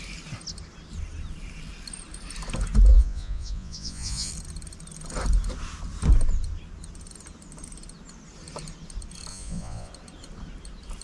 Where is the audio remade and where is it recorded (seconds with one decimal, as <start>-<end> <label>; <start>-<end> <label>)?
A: 0.0-2.9 recorded; 2.9-4.3 remade; 4.3-9.3 recorded; 9.3-9.9 remade; 9.9-11.0 recorded